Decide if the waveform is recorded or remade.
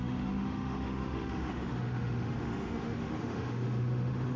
remade